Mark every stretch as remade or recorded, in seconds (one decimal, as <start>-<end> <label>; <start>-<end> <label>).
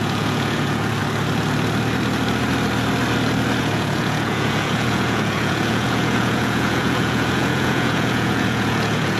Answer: 0.0-1.0 remade; 1.0-3.6 recorded; 3.6-9.2 remade